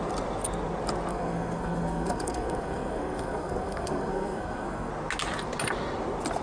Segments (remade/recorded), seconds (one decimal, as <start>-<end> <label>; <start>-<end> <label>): 0.0-1.1 recorded; 1.1-4.9 remade; 4.9-6.4 recorded